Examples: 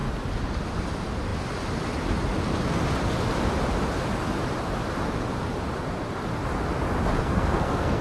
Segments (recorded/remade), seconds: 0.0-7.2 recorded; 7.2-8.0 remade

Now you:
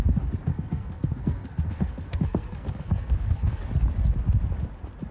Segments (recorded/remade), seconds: 0.0-0.5 recorded; 0.5-3.6 remade; 3.6-5.1 recorded